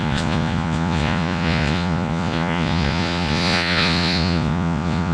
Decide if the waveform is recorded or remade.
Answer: remade